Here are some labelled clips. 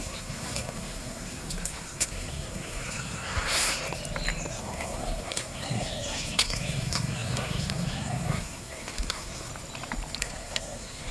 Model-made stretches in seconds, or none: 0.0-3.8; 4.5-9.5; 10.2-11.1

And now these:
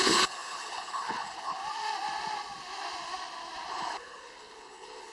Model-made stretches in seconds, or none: 0.0-1.6; 3.7-5.1

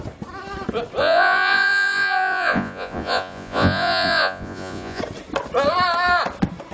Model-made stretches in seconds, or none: 1.0-5.0

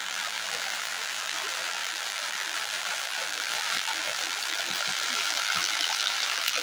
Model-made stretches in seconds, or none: 0.0-6.6

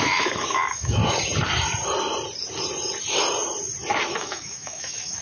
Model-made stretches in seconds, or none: 0.0-1.0; 4.1-5.2

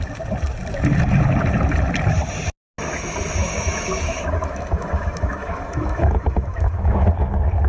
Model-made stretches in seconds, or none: 3.4-7.1

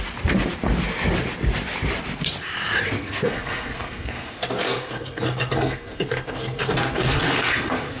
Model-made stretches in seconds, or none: 3.0-8.0